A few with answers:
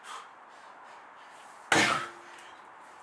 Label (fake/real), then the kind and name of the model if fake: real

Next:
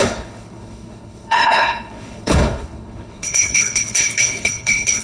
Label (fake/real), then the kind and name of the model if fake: fake, codec, HILCodec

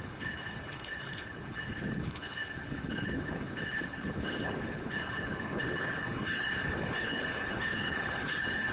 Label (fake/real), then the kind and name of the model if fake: fake, codec, HILCodec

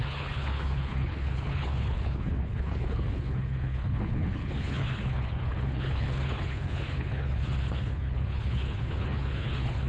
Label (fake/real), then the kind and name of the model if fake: fake, codec, HILCodec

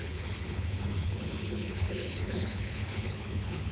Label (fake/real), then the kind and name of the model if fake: fake, codec, HILCodec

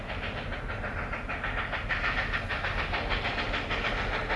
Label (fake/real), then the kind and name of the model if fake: real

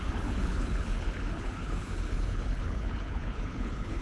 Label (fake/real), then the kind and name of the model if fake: fake, codec, HILCodec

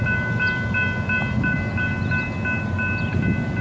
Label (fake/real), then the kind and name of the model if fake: real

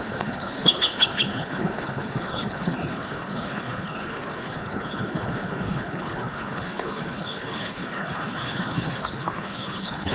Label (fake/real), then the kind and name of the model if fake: fake, codec, HILCodec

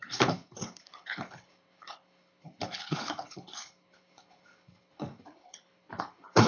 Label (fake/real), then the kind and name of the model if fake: fake, codec, HILCodec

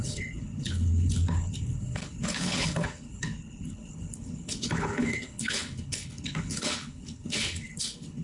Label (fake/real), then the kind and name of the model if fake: fake, codec, HILCodec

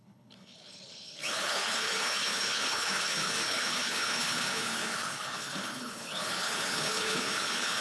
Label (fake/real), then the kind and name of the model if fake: fake, codec, HILCodec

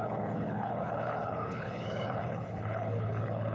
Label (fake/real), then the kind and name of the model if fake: fake, codec, HILCodec